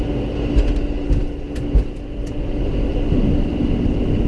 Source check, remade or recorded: recorded